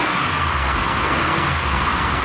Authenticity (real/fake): fake